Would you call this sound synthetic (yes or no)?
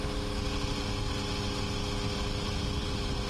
no